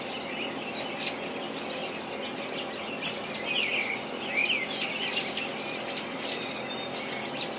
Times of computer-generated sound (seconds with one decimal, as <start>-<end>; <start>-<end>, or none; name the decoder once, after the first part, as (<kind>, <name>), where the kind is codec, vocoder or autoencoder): none